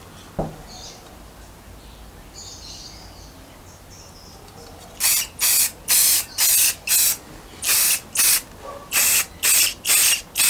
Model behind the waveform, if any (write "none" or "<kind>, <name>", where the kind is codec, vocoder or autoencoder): none